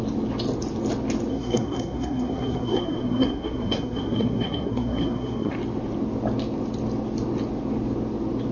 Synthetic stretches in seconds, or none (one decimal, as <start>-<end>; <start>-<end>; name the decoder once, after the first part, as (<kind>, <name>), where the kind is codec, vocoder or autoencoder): 1.3-5.5 (codec, SNAC)